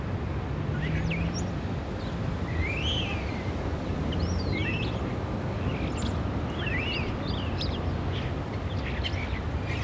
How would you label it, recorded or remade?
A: recorded